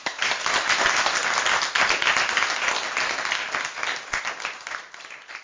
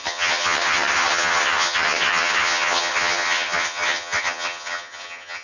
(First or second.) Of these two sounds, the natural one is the first